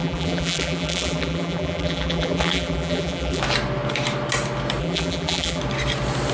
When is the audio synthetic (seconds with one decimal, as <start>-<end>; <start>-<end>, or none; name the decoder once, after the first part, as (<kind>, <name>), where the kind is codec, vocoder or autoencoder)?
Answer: 0.0-3.4 (vocoder, BigVGAN v2); 4.8-5.6

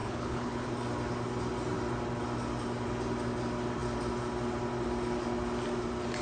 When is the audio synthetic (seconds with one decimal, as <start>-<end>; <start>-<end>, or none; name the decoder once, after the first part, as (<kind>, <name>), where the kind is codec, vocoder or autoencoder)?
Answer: 0.0-0.7 (codec, HILCodec)

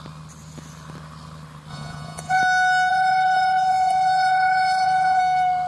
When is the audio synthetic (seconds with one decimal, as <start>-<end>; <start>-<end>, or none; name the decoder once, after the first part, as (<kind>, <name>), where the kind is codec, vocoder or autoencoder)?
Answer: 1.7-2.4 (vocoder, Vocos); 2.9-5.2

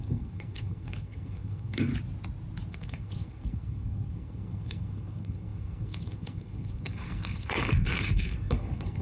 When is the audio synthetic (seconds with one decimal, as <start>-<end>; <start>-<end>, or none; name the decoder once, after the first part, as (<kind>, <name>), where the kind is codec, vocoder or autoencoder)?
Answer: 0.0-1.9 (codec, SNAC); 2.7-9.0

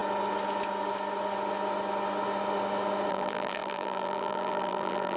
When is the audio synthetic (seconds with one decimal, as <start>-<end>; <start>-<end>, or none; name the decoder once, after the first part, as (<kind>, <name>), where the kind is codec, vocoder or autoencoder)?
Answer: 3.1-5.2 (vocoder, BigVGAN v2)

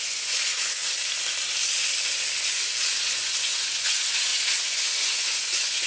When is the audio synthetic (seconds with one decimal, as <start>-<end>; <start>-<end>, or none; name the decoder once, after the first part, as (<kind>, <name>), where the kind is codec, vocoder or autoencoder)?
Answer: 0.0-0.8 (vocoder, Vocos); 3.0-5.9